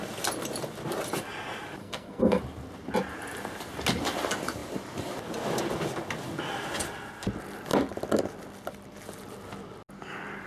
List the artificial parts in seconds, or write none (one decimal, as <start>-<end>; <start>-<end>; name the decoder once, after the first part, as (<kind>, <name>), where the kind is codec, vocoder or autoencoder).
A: 1.8-2.4 (codec, SNAC)